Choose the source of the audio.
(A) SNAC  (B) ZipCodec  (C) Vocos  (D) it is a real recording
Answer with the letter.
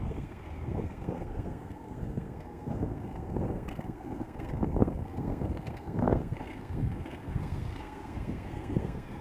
A